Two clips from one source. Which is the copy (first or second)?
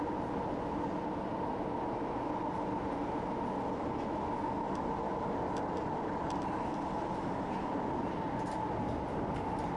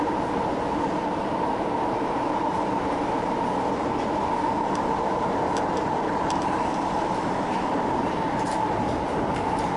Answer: second